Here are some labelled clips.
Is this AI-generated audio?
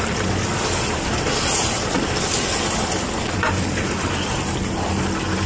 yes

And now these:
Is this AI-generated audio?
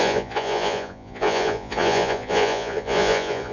yes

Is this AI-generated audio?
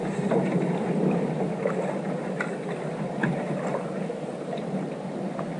no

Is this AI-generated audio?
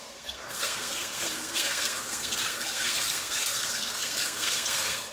yes